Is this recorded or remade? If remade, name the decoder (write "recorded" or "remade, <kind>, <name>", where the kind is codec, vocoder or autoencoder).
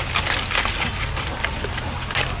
recorded